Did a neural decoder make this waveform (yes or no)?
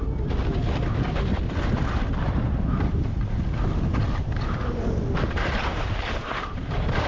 no